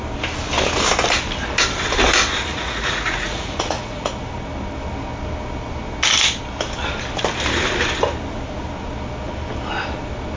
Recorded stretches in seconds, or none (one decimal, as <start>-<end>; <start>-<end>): 0.0-2.5; 4.1-10.4